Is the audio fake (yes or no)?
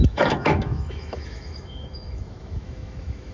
yes